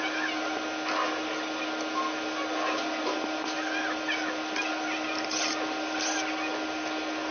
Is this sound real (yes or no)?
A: yes